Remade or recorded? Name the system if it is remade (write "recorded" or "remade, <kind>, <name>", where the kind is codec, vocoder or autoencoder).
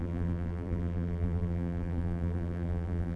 remade, vocoder, BigVGAN v2